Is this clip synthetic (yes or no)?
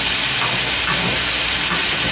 no